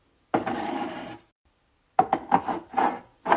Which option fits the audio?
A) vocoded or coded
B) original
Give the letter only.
B